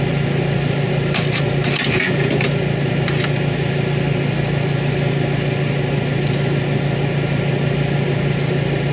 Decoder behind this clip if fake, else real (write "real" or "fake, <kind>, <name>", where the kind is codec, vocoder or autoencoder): real